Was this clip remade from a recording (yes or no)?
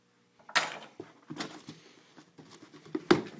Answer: no